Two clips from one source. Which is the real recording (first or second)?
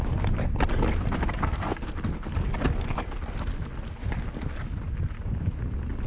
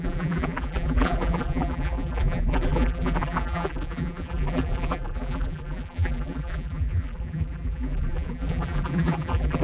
first